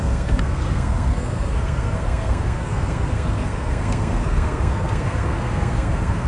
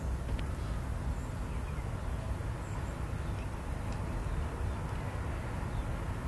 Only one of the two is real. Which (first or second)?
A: second